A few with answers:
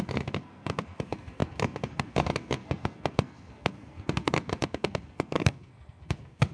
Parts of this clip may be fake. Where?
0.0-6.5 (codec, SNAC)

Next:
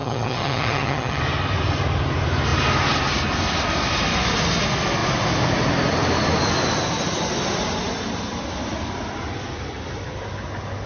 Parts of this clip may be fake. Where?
0.0-1.2 (vocoder, HiFi-GAN)

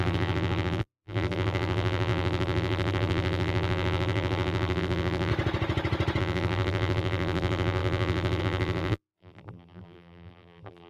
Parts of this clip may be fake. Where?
0.0-5.3 (vocoder, BigVGAN v2); 6.2-10.9

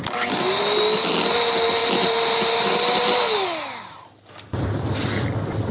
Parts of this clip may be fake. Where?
none

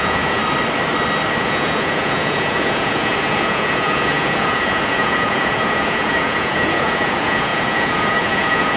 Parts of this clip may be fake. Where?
0.0-0.4 (vocoder, Vocos); 1.4-8.8